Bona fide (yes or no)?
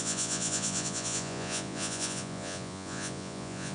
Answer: no